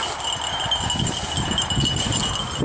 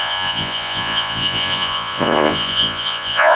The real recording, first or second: first